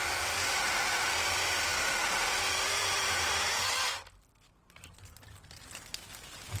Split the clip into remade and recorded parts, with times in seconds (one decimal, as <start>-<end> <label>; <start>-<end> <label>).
0.0-6.6 recorded